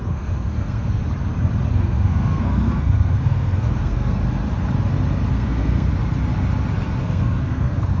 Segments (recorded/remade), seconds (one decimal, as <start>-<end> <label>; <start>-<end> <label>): 0.0-1.0 remade; 1.0-1.7 recorded; 1.7-4.2 remade; 4.2-5.3 recorded; 5.3-5.9 remade; 5.9-7.0 recorded; 7.0-8.0 remade